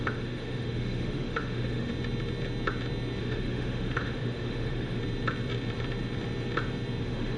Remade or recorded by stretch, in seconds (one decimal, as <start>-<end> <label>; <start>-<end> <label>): 0.0-1.9 remade; 1.9-3.2 recorded; 3.2-5.0 remade; 5.0-7.0 recorded; 7.0-7.4 remade